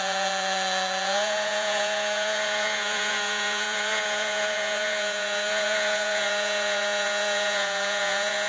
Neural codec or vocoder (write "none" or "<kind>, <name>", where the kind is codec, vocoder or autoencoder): vocoder, Vocos